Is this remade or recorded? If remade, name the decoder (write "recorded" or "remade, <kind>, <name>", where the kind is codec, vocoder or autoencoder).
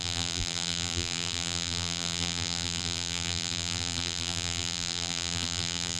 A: remade, vocoder, BigVGAN v2